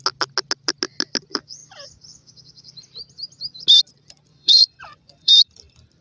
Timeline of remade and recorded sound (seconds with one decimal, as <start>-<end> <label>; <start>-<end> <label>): 0.0-4.3 recorded; 4.3-5.3 remade; 5.3-6.0 recorded

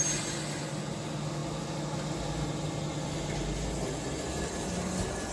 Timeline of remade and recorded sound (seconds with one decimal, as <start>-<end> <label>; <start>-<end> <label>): 0.0-5.3 recorded

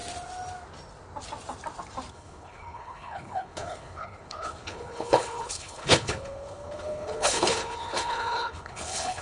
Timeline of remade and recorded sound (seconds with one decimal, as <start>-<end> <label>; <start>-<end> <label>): 0.0-2.1 recorded; 2.1-9.2 remade

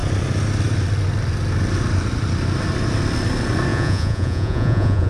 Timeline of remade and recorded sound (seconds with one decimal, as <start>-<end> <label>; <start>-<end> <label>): 0.0-3.7 recorded; 3.7-5.1 remade

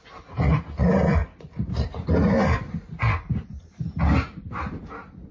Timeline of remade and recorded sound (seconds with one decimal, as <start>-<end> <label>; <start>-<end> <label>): 0.0-5.3 recorded

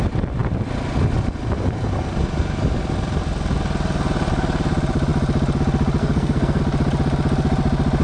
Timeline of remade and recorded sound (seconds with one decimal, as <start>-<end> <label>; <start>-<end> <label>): 0.0-6.0 recorded; 6.0-6.6 remade; 6.6-8.0 recorded

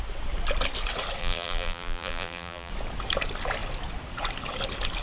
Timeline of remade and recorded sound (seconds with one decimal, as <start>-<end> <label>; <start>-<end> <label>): 0.0-1.2 recorded; 1.2-2.7 remade; 2.7-5.0 recorded